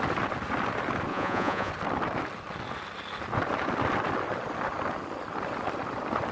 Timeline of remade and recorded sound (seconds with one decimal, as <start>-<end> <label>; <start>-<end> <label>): 0.0-1.1 recorded; 1.1-1.7 remade; 1.7-6.3 recorded

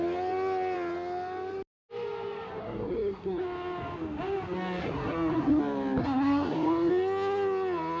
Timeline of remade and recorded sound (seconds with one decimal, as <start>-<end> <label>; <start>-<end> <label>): 0.0-2.6 recorded; 2.6-3.4 remade; 3.4-4.8 recorded; 4.8-5.6 remade; 5.6-6.0 recorded; 6.0-6.9 remade; 6.9-8.0 recorded

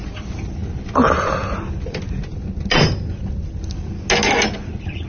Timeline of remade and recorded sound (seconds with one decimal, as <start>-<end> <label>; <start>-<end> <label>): 0.0-5.1 recorded

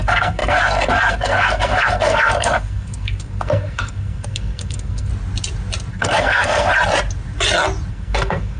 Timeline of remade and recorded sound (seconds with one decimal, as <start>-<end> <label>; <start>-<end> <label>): 0.0-5.1 remade; 5.1-5.9 recorded; 5.9-6.7 remade; 6.7-7.9 recorded; 7.9-8.6 remade

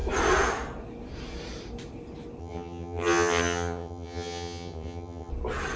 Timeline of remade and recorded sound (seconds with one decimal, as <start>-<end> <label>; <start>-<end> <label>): 0.0-2.4 recorded; 2.4-5.3 remade; 5.3-5.8 recorded